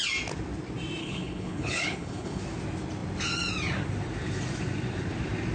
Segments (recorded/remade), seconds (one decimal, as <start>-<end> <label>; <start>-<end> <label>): 0.0-1.0 recorded; 1.0-2.4 remade; 2.4-5.5 recorded